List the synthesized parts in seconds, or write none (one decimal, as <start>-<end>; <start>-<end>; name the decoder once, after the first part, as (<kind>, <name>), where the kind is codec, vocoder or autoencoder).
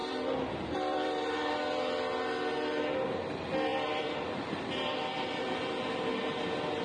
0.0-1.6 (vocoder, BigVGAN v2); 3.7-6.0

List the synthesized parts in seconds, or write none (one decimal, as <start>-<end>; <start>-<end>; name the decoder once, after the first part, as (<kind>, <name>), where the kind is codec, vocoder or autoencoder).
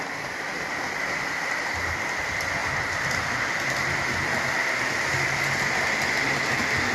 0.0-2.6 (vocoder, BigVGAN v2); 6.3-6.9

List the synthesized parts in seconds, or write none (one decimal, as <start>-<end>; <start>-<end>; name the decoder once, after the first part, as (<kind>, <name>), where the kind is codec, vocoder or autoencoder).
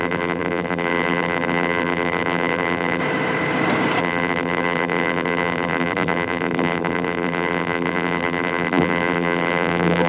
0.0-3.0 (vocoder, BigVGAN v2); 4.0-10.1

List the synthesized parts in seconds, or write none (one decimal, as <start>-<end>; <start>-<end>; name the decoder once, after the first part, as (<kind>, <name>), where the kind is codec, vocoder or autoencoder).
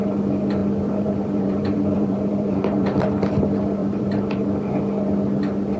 0.6-3.0 (vocoder, BigVGAN v2); 3.8-4.8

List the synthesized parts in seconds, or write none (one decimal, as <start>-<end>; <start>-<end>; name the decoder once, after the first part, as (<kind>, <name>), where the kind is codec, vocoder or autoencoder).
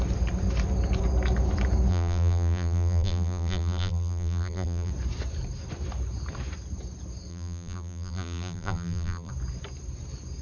1.9-4.9 (vocoder, BigVGAN v2); 7.3-9.3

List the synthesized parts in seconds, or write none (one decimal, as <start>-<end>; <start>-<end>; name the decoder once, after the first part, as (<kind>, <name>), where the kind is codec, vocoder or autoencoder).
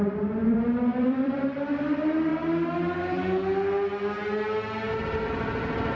0.0-2.3 (vocoder, BigVGAN v2)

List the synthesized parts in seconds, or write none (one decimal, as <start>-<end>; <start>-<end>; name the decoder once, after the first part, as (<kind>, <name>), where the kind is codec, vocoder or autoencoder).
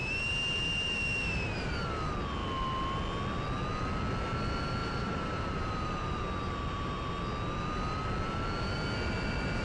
0.0-1.9 (vocoder, BigVGAN v2); 4.8-7.1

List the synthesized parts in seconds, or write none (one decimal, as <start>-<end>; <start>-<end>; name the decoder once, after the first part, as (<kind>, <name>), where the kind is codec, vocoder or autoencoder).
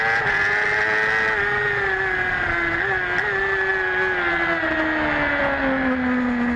none